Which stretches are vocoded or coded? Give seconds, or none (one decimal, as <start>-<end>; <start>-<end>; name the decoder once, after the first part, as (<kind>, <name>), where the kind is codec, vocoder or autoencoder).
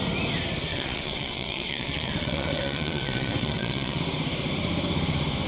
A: 0.7-4.0 (vocoder, WaveNeXt)